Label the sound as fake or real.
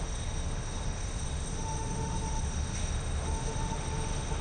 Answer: fake